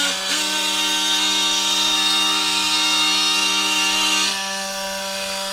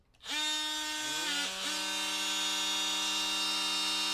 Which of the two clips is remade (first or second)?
first